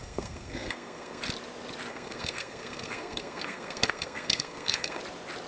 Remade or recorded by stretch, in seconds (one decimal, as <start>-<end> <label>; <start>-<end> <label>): 0.0-1.2 remade; 1.2-1.9 recorded; 1.9-5.0 remade; 5.0-5.5 recorded